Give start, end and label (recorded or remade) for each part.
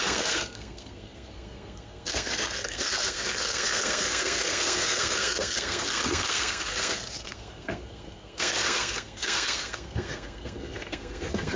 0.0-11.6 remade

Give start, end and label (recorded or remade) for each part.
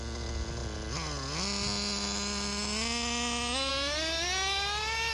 0.0-5.1 recorded